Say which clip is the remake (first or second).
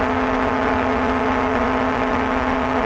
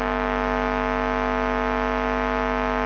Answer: first